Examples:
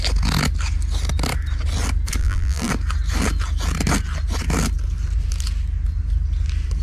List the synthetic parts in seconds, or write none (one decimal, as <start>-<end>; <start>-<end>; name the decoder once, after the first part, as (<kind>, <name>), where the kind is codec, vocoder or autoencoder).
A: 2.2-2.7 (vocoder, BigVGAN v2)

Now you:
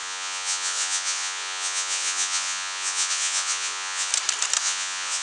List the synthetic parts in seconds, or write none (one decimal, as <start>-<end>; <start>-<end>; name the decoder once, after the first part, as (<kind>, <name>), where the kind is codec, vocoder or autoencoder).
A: 0.0-4.1 (vocoder, Vocos); 4.6-5.2

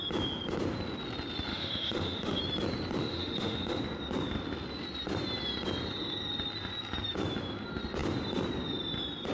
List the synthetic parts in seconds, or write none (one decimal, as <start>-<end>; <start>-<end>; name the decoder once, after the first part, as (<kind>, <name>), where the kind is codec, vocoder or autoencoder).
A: 1.5-2.4 (autoencoder, DAC-VAE); 3.0-3.8